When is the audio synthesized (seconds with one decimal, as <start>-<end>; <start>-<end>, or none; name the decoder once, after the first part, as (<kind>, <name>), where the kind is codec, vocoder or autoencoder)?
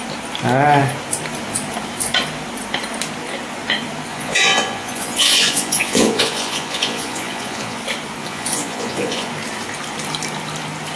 4.1-7.8 (vocoder, Vocos); 8.2-9.3